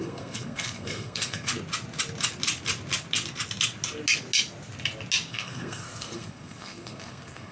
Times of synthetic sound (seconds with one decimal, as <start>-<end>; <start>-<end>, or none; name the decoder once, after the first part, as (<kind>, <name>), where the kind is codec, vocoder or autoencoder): 0.0-1.5 (codec, SNAC); 5.3-7.5